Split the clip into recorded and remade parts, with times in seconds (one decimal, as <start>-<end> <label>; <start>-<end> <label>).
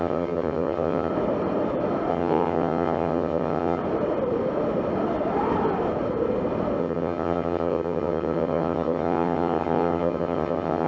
0.0-1.1 remade; 1.1-2.1 recorded; 2.1-3.8 remade; 3.8-6.8 recorded; 6.8-10.9 remade